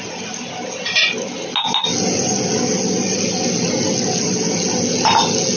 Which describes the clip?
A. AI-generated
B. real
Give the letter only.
B